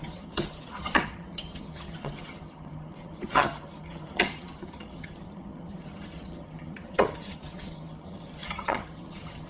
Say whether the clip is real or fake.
fake